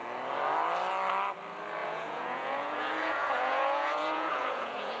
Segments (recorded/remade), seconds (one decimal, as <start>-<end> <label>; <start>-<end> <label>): 0.0-1.8 recorded; 1.8-5.0 remade